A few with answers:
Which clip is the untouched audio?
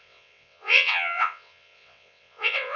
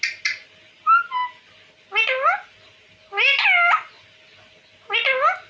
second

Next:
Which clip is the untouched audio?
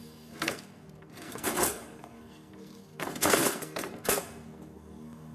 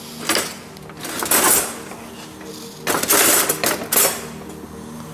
second